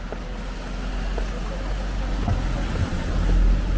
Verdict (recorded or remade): recorded